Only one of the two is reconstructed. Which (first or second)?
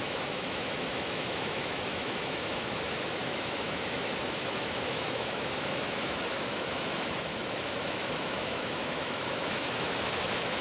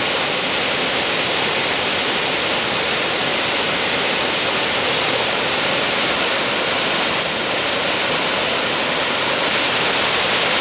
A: first